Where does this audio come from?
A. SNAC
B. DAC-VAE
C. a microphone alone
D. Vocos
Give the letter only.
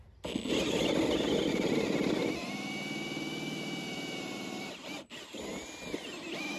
C